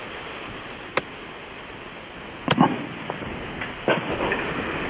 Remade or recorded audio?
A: recorded